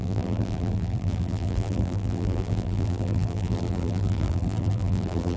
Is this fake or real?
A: fake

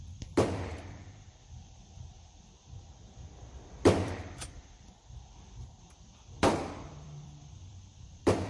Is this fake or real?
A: fake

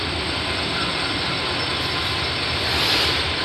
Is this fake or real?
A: fake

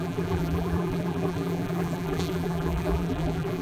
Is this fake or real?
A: fake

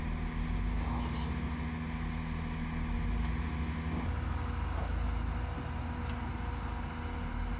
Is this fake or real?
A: real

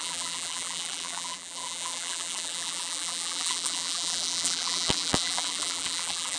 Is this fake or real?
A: fake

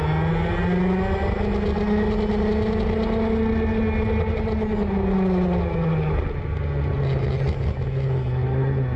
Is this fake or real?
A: real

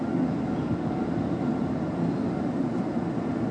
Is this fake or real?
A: fake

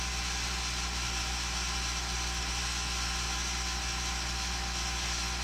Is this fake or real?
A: real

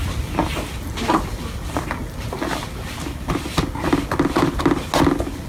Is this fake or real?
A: real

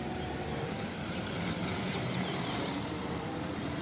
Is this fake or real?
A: fake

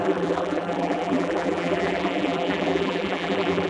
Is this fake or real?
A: fake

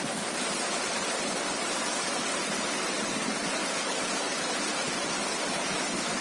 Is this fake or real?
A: fake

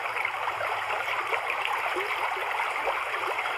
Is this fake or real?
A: real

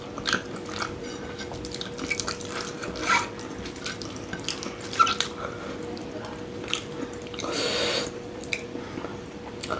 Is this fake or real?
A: fake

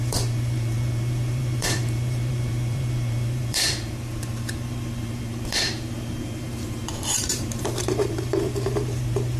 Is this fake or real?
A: fake